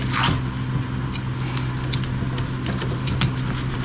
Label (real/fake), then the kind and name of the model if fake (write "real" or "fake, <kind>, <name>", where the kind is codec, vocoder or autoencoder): real